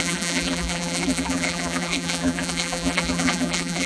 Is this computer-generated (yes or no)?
yes